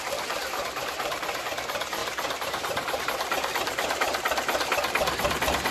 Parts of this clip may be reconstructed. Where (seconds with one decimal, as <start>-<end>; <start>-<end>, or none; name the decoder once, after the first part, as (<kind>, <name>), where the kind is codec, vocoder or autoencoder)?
0.0-4.1 (vocoder, BigVGAN v2)